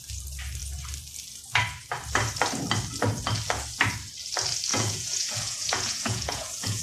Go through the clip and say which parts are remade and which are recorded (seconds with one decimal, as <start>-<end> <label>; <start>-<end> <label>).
0.0-4.7 recorded; 4.7-6.8 remade